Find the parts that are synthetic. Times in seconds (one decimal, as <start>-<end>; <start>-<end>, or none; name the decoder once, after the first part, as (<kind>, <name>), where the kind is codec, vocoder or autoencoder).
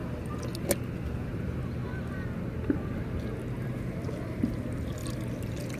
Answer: none